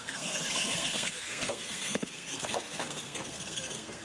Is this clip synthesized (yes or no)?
yes